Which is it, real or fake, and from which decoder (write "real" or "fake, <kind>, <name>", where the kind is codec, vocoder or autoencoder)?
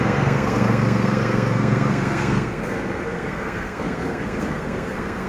fake, codec, SNAC